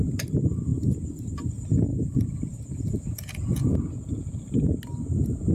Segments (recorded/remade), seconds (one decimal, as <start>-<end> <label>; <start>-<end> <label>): 0.0-1.9 recorded; 1.9-4.4 remade; 4.4-5.5 recorded